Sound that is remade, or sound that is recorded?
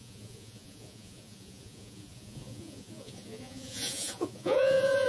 remade